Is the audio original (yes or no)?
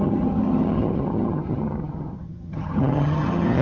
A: no